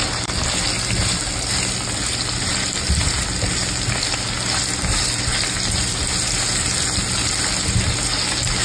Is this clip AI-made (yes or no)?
no